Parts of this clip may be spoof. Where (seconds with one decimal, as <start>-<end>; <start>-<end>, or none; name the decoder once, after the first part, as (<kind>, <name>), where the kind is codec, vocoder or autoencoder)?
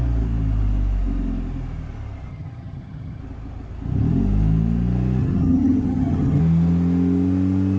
2.3-3.2 (vocoder, HiFi-GAN); 5.2-6.4